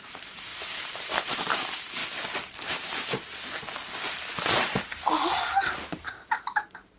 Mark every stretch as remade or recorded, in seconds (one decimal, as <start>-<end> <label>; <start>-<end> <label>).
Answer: 0.0-2.0 remade; 2.0-4.6 recorded; 4.6-7.0 remade